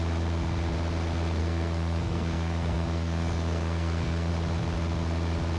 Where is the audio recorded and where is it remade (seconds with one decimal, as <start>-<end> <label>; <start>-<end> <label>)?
0.0-1.4 recorded; 1.4-4.3 remade; 4.3-5.6 recorded

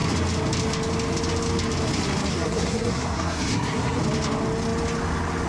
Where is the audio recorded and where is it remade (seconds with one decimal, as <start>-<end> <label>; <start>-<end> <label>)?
0.0-2.3 recorded; 2.3-4.0 remade; 4.0-5.5 recorded

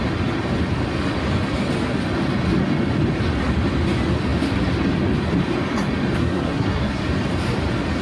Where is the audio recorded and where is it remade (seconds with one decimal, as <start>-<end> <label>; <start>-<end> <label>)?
0.0-6.2 recorded; 6.2-7.0 remade; 7.0-8.0 recorded

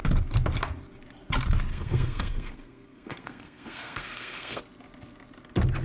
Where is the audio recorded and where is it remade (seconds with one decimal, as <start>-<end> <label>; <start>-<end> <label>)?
0.0-1.7 recorded; 1.7-4.6 remade; 4.6-5.8 recorded

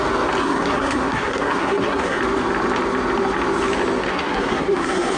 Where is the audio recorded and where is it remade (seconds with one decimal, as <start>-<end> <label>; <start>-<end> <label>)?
0.0-0.4 recorded; 0.4-2.2 remade; 2.2-4.1 recorded; 4.1-5.2 remade

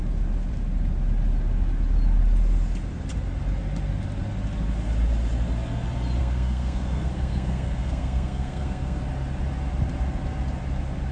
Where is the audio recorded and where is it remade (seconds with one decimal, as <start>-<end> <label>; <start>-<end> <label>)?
0.0-6.2 recorded; 6.2-9.0 remade; 9.0-11.1 recorded

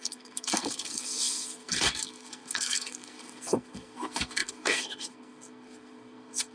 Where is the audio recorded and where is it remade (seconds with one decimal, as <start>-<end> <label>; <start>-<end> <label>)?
0.0-6.5 remade